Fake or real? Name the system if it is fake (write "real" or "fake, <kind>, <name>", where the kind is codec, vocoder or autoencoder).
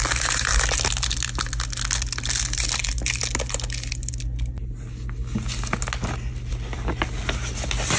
real